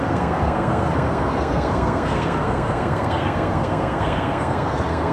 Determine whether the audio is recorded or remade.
remade